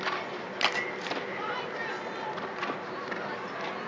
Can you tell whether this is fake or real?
real